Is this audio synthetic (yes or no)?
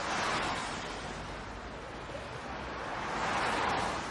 no